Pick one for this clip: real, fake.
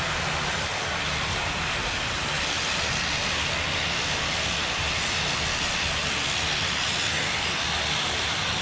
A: real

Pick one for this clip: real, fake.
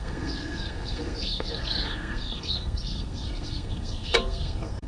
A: fake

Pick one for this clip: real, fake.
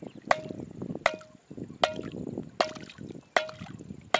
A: real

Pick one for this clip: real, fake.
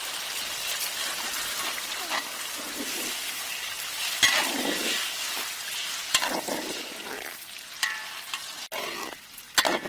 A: real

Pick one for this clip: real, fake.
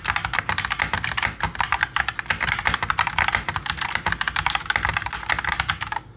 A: real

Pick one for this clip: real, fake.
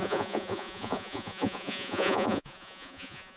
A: fake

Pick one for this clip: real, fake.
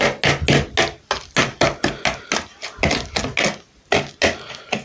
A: real